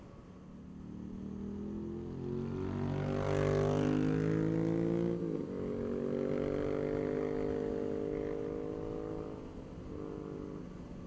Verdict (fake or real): real